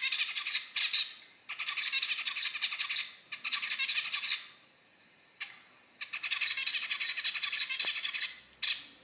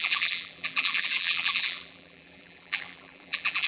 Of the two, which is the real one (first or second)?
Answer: first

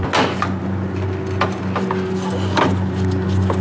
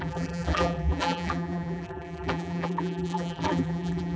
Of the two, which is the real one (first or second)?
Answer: first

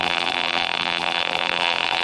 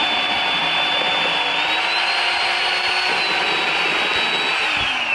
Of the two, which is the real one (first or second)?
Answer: second